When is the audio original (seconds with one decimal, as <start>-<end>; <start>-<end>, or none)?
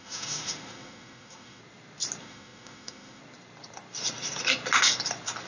1.6-2.2; 3.2-5.5